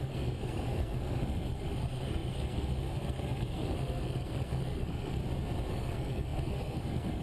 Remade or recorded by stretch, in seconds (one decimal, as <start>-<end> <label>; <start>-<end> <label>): 0.0-5.2 remade; 5.2-5.7 recorded; 5.7-7.2 remade